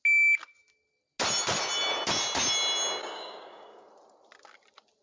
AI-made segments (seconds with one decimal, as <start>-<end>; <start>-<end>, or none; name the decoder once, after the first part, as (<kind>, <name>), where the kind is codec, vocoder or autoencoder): 3.0-3.9 (codec, DAC)